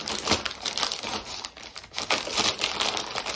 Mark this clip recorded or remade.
recorded